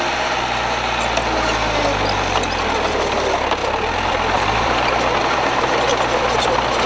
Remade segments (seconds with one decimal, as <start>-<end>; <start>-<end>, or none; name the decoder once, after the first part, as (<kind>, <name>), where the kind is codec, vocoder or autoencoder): 3.6-4.9 (vocoder, BigVGAN v2)